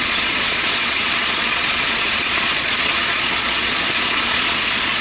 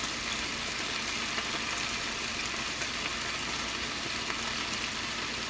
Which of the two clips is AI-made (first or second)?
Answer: first